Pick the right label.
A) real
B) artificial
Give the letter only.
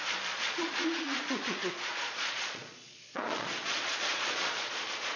B